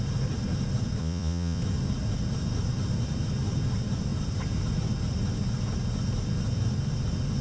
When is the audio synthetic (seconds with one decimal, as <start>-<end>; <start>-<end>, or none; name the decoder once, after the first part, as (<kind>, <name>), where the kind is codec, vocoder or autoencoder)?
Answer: 1.0-1.6 (vocoder, Vocos)